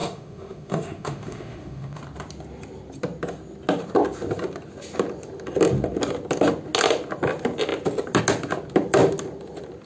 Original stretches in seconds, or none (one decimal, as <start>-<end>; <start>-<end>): 2.0-9.9